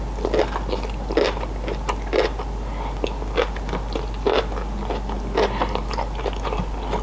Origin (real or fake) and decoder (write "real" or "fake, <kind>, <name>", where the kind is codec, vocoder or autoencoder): real